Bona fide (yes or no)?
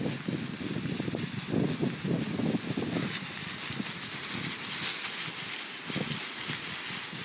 yes